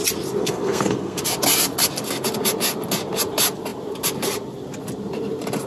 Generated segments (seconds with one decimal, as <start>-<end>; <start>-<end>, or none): 0.4-1.2